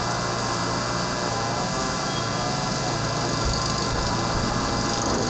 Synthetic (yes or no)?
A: no